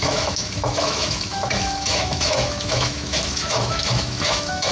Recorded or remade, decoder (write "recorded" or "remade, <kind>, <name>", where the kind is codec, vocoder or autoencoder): remade, autoencoder, DAC-VAE